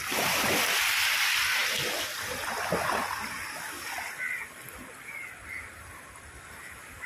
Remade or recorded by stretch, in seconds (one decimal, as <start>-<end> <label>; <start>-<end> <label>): 0.0-7.1 recorded